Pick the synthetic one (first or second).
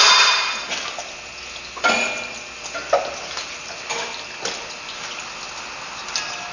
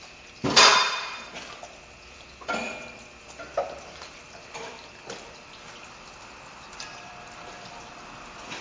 second